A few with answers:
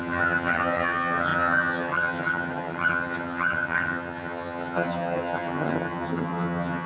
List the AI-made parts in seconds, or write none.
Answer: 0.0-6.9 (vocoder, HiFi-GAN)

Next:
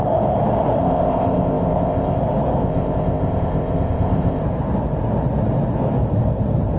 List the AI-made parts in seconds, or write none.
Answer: 0.8-2.2 (codec, ZipCodec); 2.6-4.4

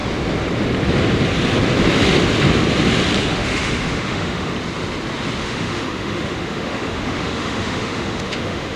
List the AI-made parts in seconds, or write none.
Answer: 3.2-4.5 (autoencoder, DAC-VAE); 5.4-8.8

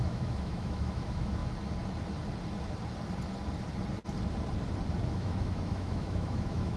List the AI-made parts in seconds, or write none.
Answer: 0.0-1.4 (autoencoder, DAC-VAE); 5.1-6.8

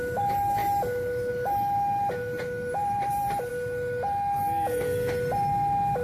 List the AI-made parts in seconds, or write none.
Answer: 2.8-3.5 (vocoder, BigVGAN v2)